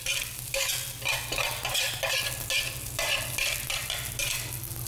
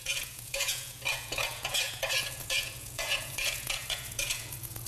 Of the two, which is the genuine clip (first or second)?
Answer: first